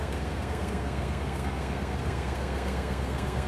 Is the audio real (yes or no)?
no